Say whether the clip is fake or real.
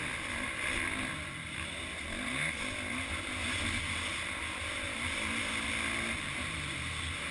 real